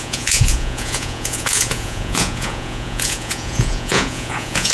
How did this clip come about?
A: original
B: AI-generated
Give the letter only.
B